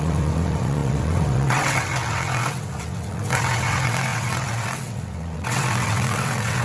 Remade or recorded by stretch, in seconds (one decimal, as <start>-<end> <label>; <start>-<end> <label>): 0.0-6.6 remade